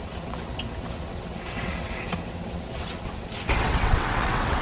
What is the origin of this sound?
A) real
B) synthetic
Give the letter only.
B